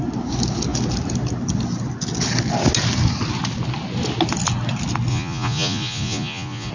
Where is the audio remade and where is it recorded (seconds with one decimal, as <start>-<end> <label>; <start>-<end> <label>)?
0.0-5.1 recorded; 5.1-6.7 remade